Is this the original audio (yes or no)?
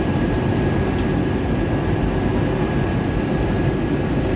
yes